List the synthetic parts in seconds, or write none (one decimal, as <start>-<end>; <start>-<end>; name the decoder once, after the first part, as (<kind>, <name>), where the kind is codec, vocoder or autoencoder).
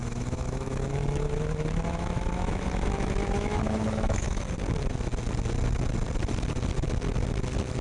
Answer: 0.0-4.4 (autoencoder, DAC-VAE)